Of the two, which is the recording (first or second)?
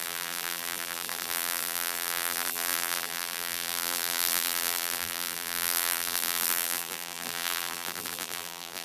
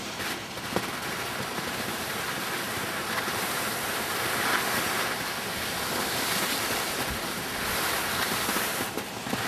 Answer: second